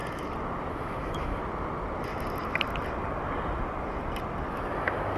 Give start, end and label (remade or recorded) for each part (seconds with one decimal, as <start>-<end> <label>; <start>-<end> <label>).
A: 0.0-0.7 recorded; 0.7-1.4 remade; 1.4-4.5 recorded; 4.5-5.2 remade